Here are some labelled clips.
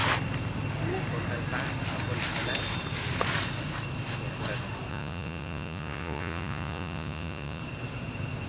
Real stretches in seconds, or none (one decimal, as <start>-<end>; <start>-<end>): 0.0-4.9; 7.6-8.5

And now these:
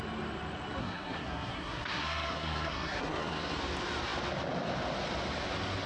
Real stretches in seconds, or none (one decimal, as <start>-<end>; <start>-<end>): 0.0-0.8; 3.6-5.9

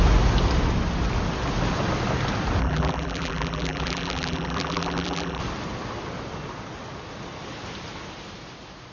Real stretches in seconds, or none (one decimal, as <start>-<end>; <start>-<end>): 0.0-2.6; 5.4-8.9

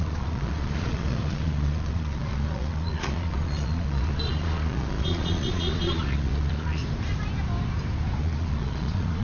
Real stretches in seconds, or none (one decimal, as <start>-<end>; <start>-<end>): 6.8-8.2

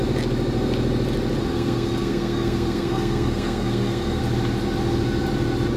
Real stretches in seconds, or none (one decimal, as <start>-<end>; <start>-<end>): 0.0-1.5; 4.2-5.8

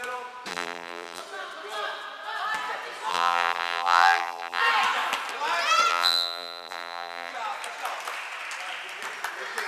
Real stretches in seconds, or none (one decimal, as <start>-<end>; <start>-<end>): 0.0-0.5; 1.2-3.1; 4.6-5.9; 7.3-9.7